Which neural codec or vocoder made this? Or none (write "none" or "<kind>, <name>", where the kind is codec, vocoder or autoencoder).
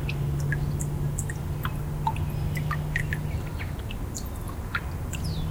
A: none